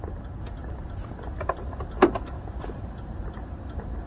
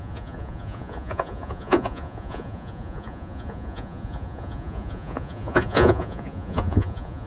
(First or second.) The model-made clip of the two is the second